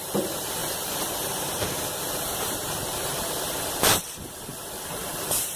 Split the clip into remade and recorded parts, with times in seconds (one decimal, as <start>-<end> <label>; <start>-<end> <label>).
0.0-5.6 remade